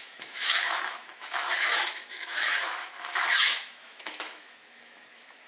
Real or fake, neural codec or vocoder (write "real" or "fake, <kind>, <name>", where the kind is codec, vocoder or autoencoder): fake, autoencoder, DAC-VAE